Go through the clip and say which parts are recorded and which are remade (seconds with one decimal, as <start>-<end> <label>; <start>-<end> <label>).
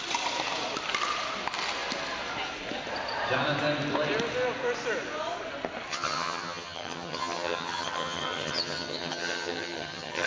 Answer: 0.0-5.9 recorded; 5.9-10.3 remade